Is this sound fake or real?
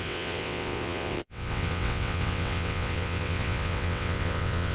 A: fake